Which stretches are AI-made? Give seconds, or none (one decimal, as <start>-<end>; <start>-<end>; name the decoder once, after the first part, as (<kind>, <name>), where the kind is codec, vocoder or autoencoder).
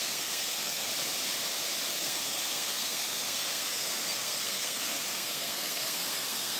0.0-0.9 (codec, SNAC); 1.9-6.6